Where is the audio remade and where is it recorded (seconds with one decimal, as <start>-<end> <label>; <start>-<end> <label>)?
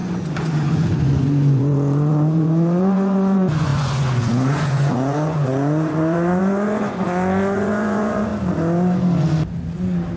0.0-8.3 remade; 8.3-10.2 recorded